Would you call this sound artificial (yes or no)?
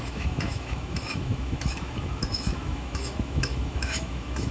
yes